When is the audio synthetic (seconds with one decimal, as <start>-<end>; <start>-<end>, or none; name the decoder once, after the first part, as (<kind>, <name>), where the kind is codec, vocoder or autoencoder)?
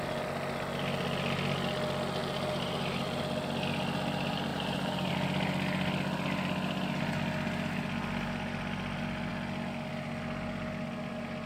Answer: 2.2-3.2 (vocoder, BigVGAN v2); 4.5-5.1